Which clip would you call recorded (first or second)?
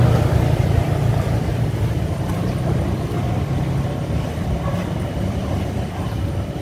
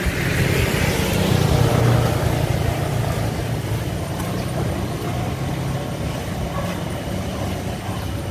second